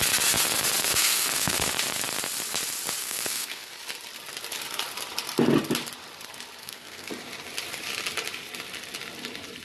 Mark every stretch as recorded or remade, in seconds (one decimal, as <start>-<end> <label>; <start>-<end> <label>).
0.0-0.8 recorded; 0.8-1.7 remade; 1.7-3.0 recorded; 3.0-3.7 remade; 3.7-6.6 recorded; 6.6-7.1 remade; 7.1-9.6 recorded